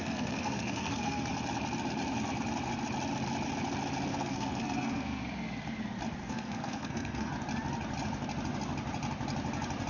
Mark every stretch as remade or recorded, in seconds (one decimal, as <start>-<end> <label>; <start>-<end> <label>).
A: 0.0-1.3 remade; 1.3-4.1 recorded; 4.1-5.2 remade; 5.2-6.2 recorded; 6.2-7.3 remade; 7.3-9.9 recorded

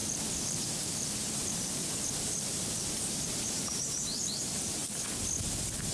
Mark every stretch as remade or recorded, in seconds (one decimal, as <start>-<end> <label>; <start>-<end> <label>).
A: 0.0-4.8 remade; 4.8-5.9 recorded